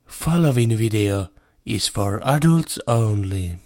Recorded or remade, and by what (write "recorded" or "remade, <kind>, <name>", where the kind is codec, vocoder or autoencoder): remade, autoencoder, DAC-VAE